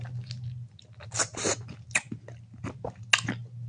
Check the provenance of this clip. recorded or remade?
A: recorded